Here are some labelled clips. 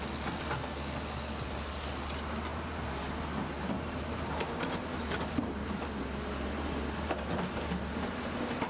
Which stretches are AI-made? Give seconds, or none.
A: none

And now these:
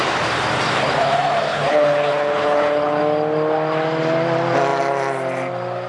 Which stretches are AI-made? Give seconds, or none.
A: 1.5-3.0 (codec, HILCodec)

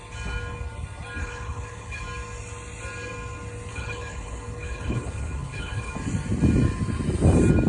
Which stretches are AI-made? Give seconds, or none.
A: 1.2-2.0 (codec, HILCodec); 3.7-5.9

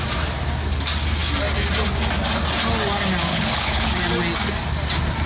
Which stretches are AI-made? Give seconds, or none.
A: 3.3-3.9 (codec, HILCodec)

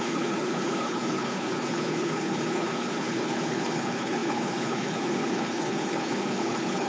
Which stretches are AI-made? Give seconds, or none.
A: 0.0-6.9 (codec, HILCodec)

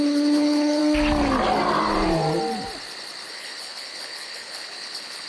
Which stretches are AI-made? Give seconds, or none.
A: 0.0-0.8 (codec, HILCodec); 3.3-5.3

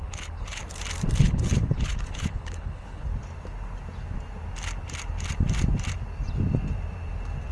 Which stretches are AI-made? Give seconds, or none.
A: 0.0-0.6 (codec, HILCodec); 1.2-3.1

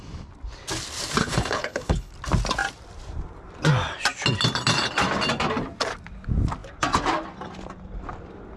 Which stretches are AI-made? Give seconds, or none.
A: 1.2-2.1 (codec, HILCodec)